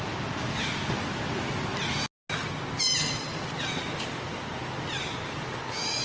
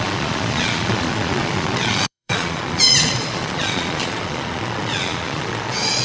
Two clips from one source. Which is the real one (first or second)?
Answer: first